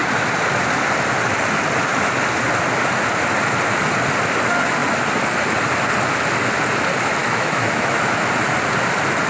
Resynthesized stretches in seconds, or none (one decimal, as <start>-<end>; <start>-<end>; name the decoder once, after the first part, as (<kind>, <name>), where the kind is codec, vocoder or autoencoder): 7.2-8.3 (autoencoder, DAC-VAE)